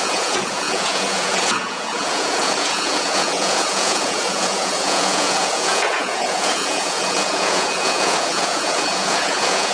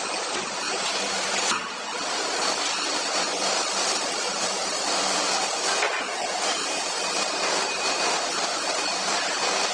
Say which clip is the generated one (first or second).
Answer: first